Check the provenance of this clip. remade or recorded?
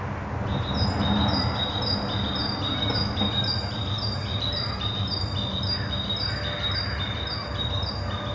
recorded